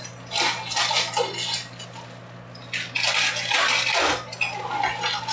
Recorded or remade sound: recorded